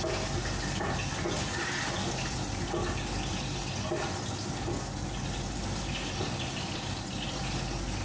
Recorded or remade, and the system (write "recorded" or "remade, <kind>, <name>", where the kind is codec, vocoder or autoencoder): recorded